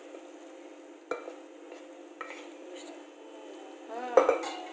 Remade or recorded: recorded